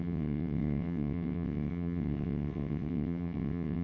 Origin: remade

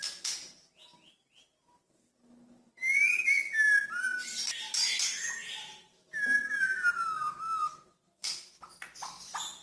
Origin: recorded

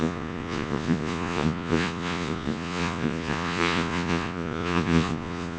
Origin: remade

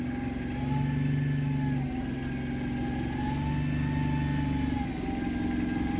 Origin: recorded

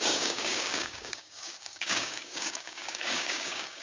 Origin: remade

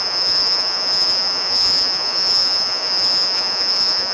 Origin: remade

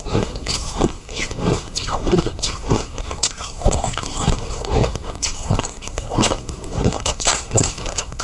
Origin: remade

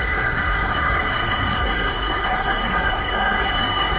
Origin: remade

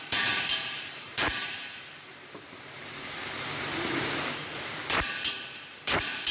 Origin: remade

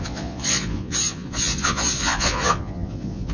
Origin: remade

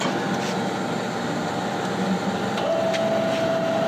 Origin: recorded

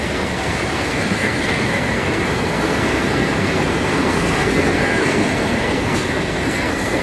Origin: remade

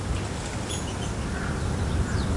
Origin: recorded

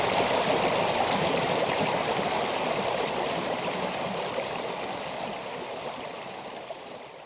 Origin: recorded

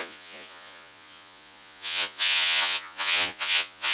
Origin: remade